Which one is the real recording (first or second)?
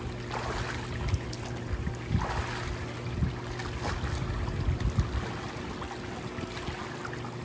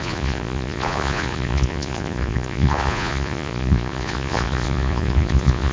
first